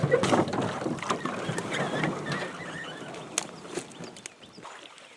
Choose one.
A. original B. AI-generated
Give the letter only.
A